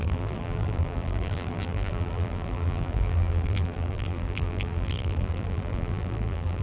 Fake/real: fake